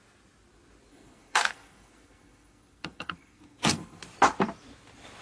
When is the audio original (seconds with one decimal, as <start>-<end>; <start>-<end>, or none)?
0.0-0.9; 4.0-5.2